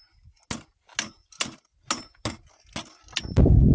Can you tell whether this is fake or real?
real